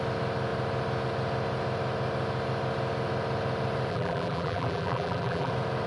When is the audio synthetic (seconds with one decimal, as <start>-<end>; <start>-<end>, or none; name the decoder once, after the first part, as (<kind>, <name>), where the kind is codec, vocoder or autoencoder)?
3.9-5.5 (vocoder, BigVGAN v2)